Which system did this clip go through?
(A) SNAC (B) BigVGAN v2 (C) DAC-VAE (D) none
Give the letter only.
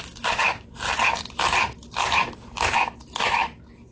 D